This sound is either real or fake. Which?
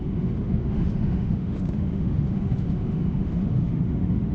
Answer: fake